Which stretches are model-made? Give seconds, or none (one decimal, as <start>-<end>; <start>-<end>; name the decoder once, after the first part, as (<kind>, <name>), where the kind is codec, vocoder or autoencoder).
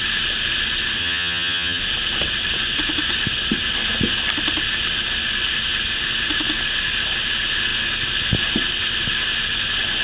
1.0-1.8 (vocoder, HiFi-GAN)